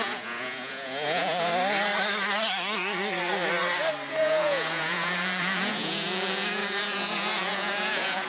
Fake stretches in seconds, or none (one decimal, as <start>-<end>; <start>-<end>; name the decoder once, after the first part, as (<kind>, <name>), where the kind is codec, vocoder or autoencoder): 0.0-1.5 (vocoder, Vocos); 4.2-8.3